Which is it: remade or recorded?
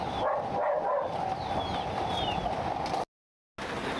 recorded